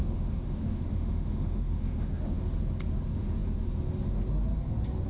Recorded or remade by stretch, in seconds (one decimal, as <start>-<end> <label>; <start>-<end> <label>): 0.0-2.4 remade; 2.4-5.1 recorded